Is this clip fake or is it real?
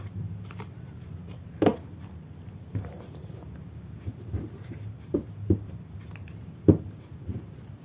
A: fake